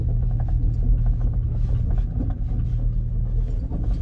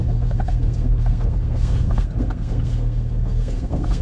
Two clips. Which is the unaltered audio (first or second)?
first